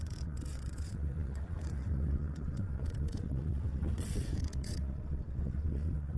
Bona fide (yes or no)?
no